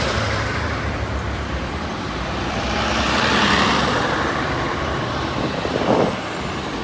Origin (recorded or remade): remade